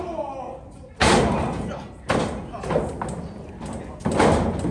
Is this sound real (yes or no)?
yes